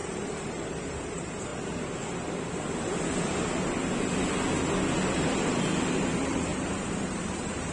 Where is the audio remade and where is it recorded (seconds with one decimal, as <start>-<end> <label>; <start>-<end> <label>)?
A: 0.0-1.5 remade; 1.5-5.9 recorded; 5.9-7.7 remade